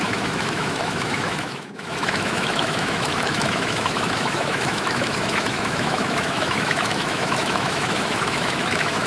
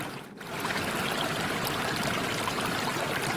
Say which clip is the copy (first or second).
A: first